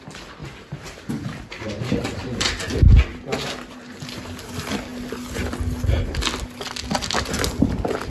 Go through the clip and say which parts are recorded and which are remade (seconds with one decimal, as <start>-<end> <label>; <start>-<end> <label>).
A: 0.0-0.4 recorded; 0.4-1.1 remade; 1.1-8.1 recorded